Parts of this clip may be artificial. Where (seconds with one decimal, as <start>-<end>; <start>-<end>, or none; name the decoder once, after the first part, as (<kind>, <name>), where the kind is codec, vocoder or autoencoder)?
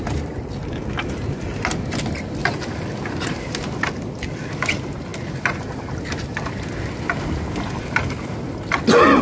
none